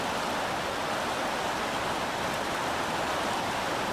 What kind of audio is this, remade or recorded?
recorded